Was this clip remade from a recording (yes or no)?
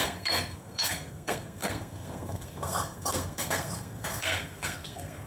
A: yes